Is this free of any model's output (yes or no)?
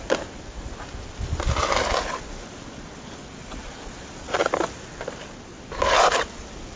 yes